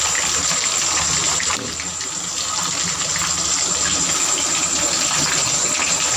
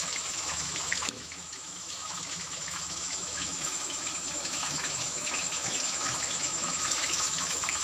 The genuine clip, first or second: first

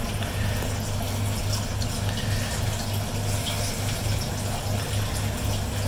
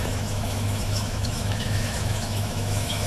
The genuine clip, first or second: first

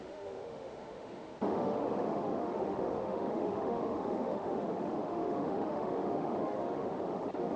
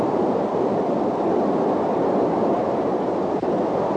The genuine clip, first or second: second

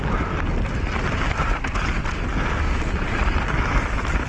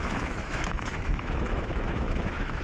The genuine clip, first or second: first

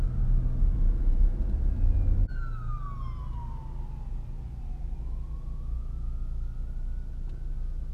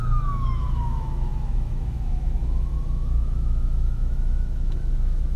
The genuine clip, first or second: first